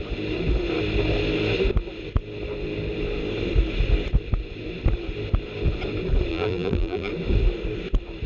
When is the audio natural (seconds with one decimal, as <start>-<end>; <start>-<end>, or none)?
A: 0.0-6.3; 7.1-8.3